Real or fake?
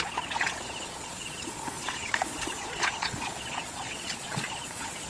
fake